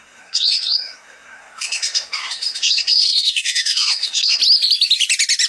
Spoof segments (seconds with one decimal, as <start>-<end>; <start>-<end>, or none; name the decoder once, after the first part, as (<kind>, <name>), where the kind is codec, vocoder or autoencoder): 0.0-4.4 (codec, SNAC)